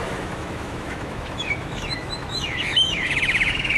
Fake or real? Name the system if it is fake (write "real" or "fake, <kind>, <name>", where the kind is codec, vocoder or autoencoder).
fake, autoencoder, DAC-VAE